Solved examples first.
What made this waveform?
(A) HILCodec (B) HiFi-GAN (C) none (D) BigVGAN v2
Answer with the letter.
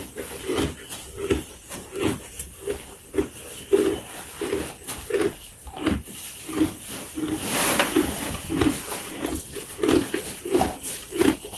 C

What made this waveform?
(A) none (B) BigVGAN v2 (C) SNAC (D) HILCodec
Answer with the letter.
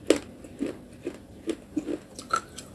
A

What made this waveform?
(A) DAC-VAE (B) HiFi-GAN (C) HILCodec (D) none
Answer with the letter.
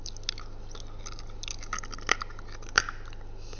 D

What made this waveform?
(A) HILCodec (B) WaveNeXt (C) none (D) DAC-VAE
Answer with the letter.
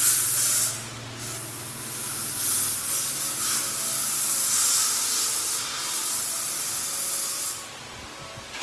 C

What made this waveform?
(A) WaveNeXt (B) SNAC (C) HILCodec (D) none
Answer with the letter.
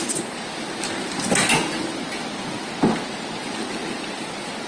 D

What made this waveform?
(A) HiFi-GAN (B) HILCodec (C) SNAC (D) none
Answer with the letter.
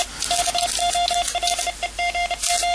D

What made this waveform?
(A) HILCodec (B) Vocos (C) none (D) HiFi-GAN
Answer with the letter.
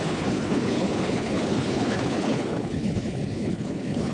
A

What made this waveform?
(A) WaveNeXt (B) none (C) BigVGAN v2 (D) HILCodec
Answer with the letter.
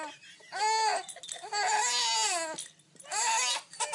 B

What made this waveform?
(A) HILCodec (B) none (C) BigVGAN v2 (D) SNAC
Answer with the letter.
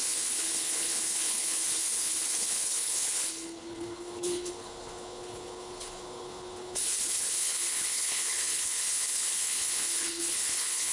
A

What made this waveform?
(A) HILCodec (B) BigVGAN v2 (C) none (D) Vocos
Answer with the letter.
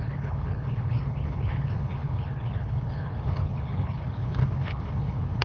A